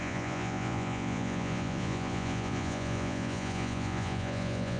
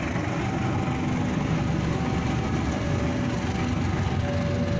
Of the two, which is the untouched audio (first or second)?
second